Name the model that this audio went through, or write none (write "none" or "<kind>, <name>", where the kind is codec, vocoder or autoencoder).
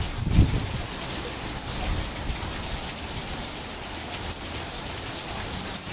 vocoder, BigVGAN v2